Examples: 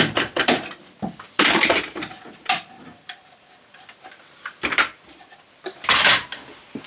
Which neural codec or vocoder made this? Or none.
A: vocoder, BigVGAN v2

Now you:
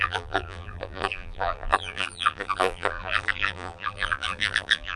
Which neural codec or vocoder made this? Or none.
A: vocoder, BigVGAN v2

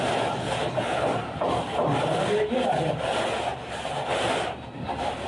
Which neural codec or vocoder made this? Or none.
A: none